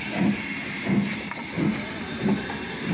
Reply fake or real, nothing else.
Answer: real